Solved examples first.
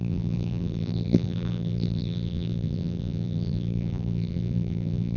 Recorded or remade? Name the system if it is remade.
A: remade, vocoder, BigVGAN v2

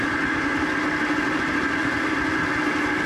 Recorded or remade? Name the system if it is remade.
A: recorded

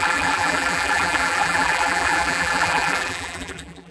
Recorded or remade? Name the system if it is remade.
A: remade, vocoder, BigVGAN v2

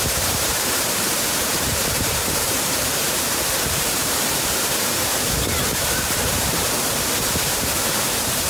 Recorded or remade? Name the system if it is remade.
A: remade, vocoder, BigVGAN v2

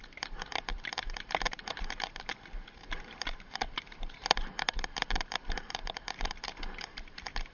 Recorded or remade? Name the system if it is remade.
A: remade, vocoder, BigVGAN v2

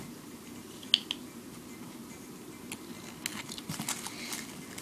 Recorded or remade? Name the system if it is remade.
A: recorded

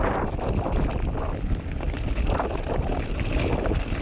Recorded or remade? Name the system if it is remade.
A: recorded